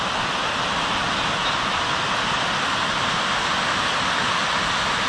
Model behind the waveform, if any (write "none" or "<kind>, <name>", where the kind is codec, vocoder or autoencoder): none